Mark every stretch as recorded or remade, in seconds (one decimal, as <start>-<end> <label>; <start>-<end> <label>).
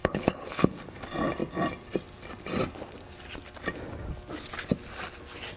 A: 0.0-0.7 remade; 0.7-5.6 recorded